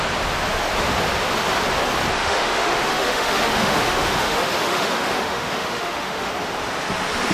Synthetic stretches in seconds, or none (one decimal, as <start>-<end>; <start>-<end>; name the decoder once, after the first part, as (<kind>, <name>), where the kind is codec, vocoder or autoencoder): 2.2-6.3 (autoencoder, DAC-VAE)